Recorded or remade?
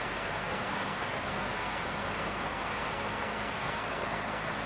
remade